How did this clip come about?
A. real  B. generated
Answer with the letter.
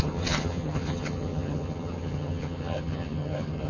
B